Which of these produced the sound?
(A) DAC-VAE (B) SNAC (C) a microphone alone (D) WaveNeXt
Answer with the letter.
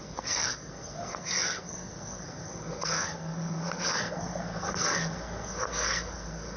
B